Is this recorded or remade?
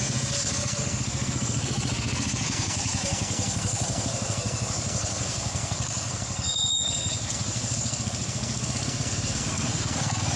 remade